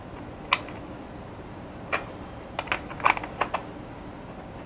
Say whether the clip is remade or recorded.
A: recorded